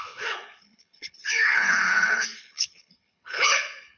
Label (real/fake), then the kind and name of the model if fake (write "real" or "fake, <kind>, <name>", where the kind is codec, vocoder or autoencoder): fake, codec, HILCodec